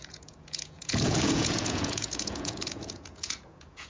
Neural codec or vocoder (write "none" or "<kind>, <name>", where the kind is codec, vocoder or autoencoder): vocoder, Vocos